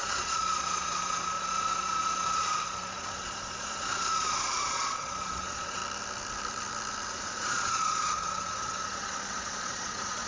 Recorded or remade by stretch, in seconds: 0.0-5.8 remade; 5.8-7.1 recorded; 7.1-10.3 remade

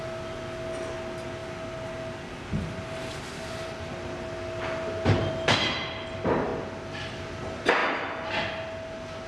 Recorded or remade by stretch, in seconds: 0.0-9.3 recorded

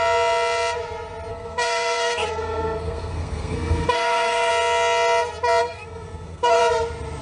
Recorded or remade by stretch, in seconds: 0.0-1.3 recorded; 1.3-4.5 remade; 4.5-5.6 recorded; 5.6-6.6 remade; 6.6-7.2 recorded

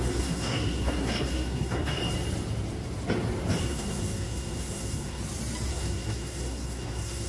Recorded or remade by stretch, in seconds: 0.0-2.0 remade; 2.0-3.6 recorded; 3.6-5.2 remade; 5.2-5.7 recorded; 5.7-7.3 remade

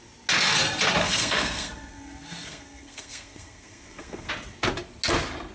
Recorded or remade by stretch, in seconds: 0.0-1.0 recorded; 1.0-4.3 remade; 4.3-5.5 recorded

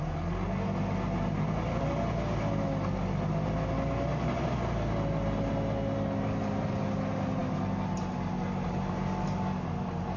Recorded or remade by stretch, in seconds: 0.0-10.2 recorded